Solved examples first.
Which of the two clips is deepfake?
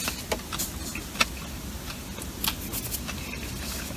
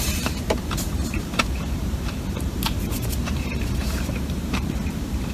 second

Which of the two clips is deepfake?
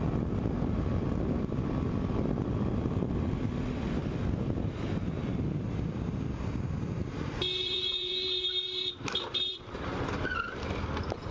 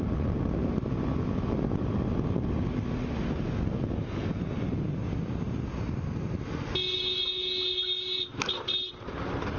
first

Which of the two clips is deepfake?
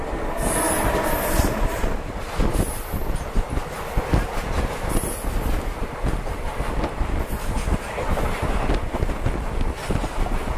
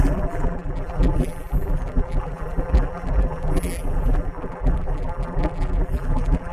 second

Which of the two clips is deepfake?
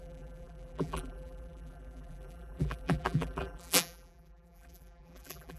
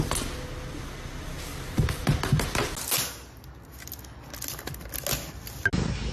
first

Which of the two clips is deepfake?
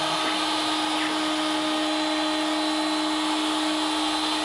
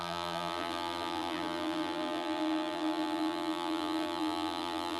second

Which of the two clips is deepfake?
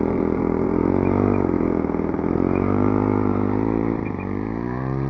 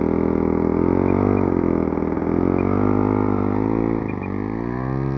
first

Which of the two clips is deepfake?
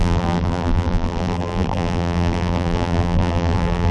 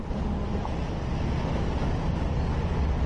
first